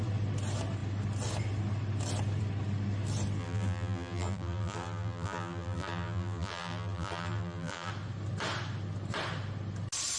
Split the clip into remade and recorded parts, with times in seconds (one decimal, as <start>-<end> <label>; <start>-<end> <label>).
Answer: 0.0-3.4 recorded; 3.4-7.9 remade; 7.9-10.2 recorded